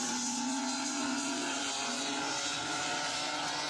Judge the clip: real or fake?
fake